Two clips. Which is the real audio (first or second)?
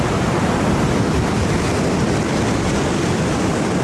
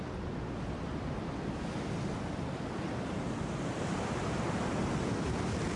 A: second